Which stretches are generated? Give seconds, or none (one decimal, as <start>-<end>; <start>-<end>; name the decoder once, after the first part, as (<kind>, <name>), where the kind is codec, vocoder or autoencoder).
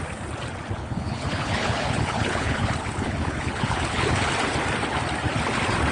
0.8-4.3 (codec, HILCodec)